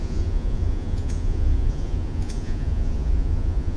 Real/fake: fake